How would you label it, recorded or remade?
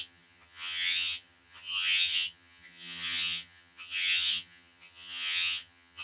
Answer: remade